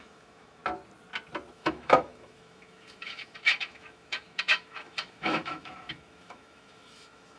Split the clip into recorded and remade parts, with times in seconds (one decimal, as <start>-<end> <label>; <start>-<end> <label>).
0.0-0.6 remade; 0.6-1.5 recorded; 1.5-7.4 remade